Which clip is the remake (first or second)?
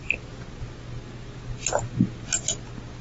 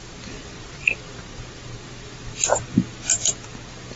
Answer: second